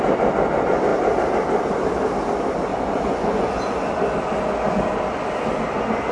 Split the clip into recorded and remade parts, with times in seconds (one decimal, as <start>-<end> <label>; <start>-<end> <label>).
0.0-2.7 recorded; 2.7-3.5 remade; 3.5-6.1 recorded